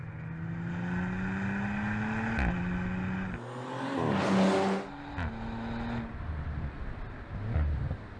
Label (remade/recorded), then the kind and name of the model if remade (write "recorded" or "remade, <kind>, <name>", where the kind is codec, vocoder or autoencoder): recorded